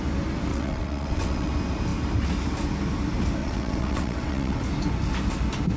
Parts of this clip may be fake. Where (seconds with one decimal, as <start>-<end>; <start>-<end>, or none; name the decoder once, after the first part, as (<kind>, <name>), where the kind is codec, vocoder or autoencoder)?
0.5-1.5 (vocoder, WaveNeXt); 3.4-4.6